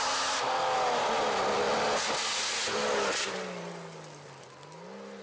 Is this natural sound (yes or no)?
yes